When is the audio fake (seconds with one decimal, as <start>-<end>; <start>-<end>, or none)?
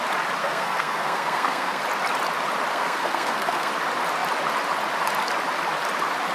0.4-1.8; 2.7-3.7